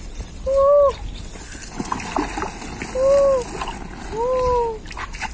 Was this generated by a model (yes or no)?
no